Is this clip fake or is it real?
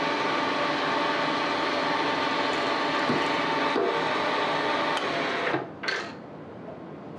real